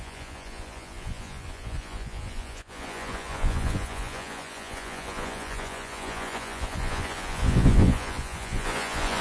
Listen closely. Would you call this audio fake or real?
fake